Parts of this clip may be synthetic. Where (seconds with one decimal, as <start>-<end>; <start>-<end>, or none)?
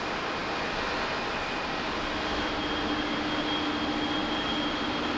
4.2-5.2